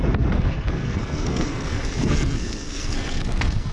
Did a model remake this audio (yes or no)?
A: yes